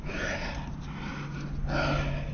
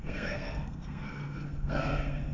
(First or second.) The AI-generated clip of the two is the second